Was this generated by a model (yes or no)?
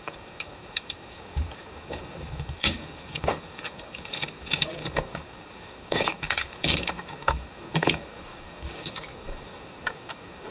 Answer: yes